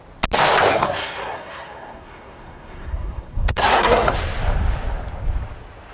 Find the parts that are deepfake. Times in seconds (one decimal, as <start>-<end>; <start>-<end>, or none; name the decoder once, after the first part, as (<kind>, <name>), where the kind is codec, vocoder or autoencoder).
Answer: 0.7-4.1 (codec, SNAC)